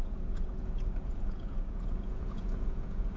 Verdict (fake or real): fake